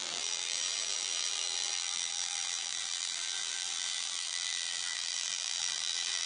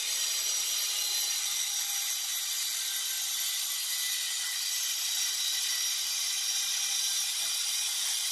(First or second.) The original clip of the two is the second